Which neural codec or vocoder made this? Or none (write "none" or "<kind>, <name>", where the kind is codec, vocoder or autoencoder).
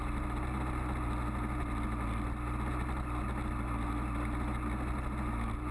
none